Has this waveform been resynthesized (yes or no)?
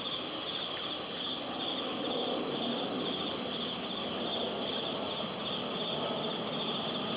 no